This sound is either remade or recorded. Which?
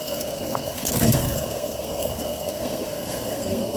remade